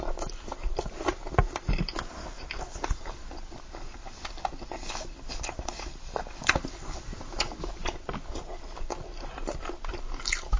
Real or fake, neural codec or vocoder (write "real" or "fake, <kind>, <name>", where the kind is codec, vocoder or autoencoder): real